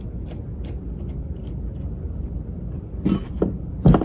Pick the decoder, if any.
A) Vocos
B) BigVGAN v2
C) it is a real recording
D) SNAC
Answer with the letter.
C